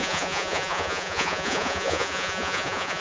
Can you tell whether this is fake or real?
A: fake